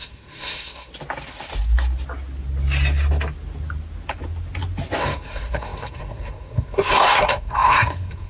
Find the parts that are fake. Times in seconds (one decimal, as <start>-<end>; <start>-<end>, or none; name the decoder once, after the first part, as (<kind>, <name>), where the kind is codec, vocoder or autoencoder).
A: 0.0-0.9 (codec, SNAC); 5.0-8.3

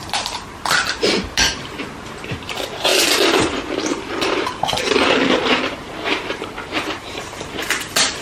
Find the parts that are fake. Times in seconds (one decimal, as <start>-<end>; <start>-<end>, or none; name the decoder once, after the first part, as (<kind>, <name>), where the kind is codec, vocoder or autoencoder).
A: 0.0-8.2 (vocoder, BigVGAN v2)

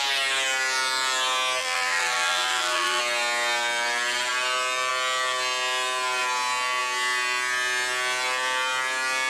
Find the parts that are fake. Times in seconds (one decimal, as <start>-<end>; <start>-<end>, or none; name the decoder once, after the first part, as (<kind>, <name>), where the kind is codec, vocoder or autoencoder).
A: 1.6-3.0 (vocoder, BigVGAN v2)

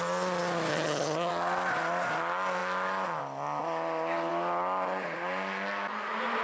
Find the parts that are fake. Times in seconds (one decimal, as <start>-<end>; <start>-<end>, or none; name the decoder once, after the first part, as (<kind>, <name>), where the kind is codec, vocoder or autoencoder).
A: 0.7-1.3 (vocoder, HiFi-GAN)

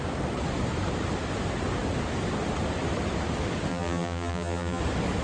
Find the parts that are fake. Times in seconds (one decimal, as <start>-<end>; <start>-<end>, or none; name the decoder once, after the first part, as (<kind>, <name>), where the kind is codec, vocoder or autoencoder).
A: 3.7-4.8 (vocoder, BigVGAN v2)

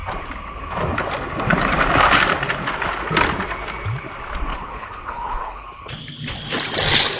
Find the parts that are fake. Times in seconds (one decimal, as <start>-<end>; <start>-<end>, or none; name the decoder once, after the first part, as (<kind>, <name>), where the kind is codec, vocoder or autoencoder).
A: 4.5-5.9 (codec, HILCodec)